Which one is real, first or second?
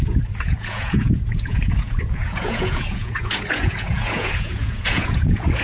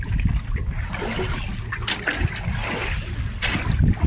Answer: second